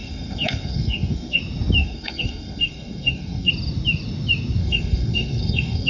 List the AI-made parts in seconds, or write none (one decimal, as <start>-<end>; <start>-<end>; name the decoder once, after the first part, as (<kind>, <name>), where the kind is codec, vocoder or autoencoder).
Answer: 0.0-1.4 (codec, SNAC); 1.8-3.5; 4.6-5.9